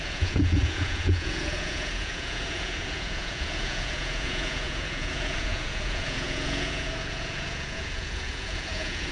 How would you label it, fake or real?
fake